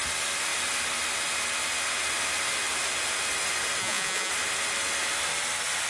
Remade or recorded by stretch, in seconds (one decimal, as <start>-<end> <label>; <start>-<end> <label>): 0.0-3.8 recorded; 3.8-4.3 remade; 4.3-5.9 recorded